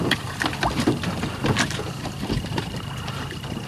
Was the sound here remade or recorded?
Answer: recorded